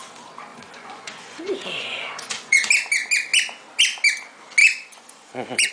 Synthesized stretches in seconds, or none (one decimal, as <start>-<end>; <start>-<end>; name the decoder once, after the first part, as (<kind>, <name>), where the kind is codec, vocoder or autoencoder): 0.5-2.7 (vocoder, Vocos); 4.6-5.7